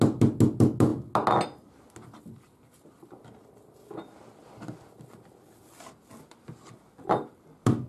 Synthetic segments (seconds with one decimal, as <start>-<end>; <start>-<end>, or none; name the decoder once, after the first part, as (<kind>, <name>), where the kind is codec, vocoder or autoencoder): none